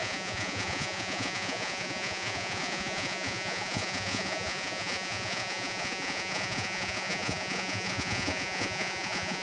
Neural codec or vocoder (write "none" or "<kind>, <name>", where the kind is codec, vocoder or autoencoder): vocoder, Vocos